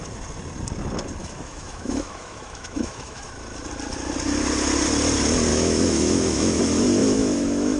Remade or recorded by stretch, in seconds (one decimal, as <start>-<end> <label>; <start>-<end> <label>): 0.0-1.2 recorded; 1.2-3.3 remade; 3.3-5.5 recorded; 5.5-6.6 remade; 6.6-7.0 recorded; 7.0-7.8 remade